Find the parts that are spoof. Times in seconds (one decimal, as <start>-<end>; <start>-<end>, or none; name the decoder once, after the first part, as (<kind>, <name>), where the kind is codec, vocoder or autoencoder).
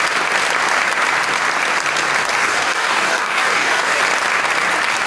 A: 2.4-4.0 (codec, DAC)